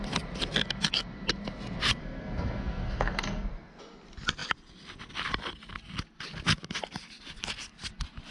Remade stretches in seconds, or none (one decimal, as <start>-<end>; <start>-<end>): 2.0-3.8